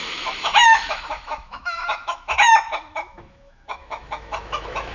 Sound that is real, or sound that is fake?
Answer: fake